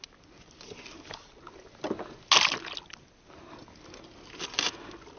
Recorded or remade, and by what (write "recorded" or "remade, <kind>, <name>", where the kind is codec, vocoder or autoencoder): recorded